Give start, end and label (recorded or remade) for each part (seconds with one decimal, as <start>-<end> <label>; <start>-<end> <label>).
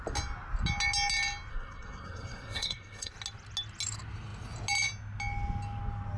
0.0-1.5 recorded; 1.5-3.1 remade; 3.1-6.2 recorded